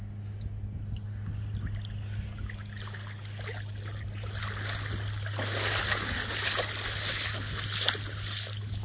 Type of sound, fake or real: real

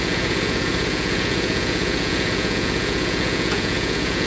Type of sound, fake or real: fake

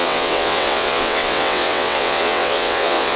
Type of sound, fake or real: fake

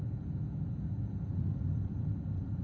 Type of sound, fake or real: fake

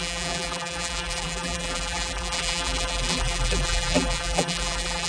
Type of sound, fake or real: fake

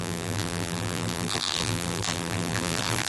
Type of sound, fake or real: fake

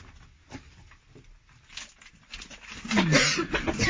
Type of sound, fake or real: real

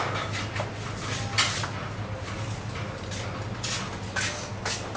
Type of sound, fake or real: real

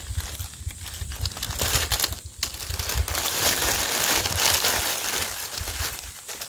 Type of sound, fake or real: real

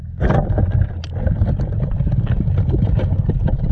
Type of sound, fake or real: real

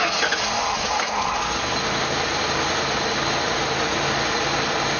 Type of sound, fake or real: real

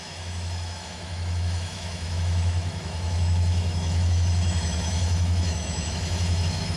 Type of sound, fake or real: fake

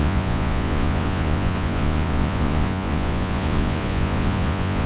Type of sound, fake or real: fake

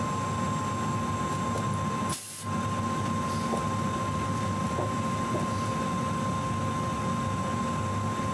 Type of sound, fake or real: real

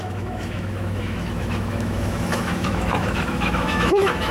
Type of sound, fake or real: fake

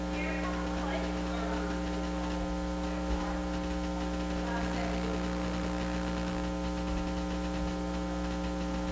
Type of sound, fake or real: real